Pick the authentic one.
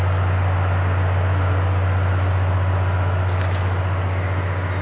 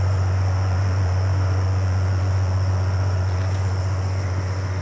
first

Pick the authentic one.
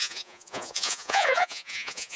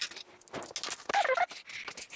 second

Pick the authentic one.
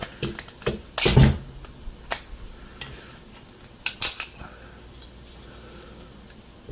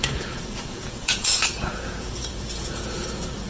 first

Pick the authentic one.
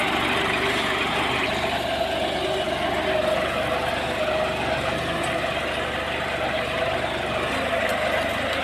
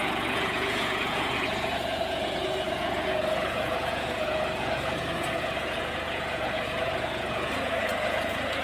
first